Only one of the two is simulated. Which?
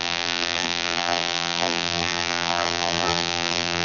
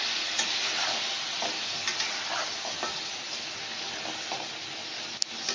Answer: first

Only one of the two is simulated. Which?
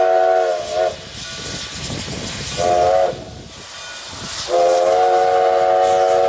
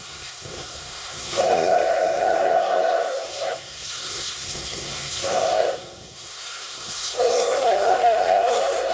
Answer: second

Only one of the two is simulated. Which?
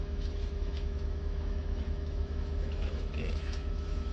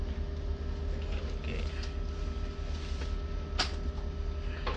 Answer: first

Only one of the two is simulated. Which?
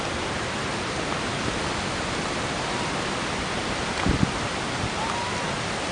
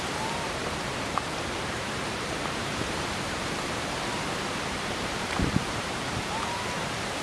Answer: second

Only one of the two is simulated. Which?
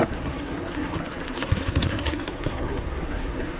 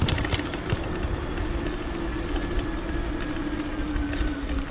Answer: first